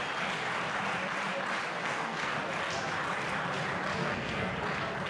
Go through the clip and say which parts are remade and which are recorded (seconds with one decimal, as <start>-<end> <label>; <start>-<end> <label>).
0.0-1.8 recorded; 1.8-2.3 remade; 2.3-4.0 recorded; 4.0-4.5 remade; 4.5-5.1 recorded